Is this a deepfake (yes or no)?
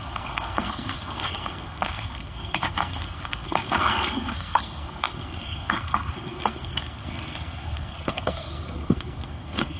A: yes